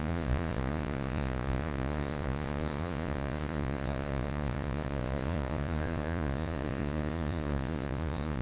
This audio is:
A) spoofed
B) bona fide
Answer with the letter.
A